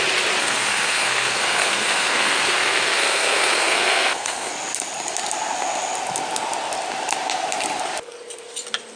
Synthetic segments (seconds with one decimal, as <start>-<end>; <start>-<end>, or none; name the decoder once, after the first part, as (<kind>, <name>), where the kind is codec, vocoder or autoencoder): 0.4-4.5 (codec, SNAC)